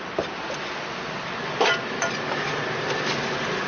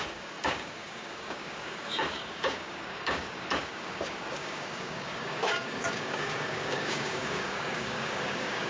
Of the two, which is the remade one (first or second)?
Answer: second